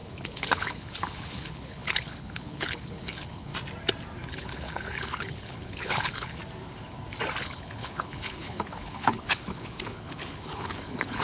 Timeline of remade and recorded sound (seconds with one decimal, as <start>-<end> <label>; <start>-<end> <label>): 0.0-3.5 remade; 3.5-4.3 recorded; 4.3-6.4 remade; 6.4-7.4 recorded; 7.4-11.2 remade